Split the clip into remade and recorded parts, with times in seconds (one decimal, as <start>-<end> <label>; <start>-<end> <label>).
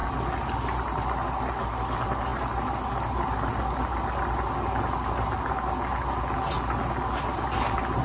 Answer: 0.0-8.0 recorded